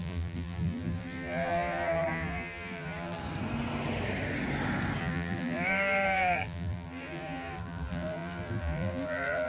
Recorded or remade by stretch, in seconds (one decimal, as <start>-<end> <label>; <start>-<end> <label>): 0.0-3.2 remade; 3.2-5.0 recorded; 5.0-9.5 remade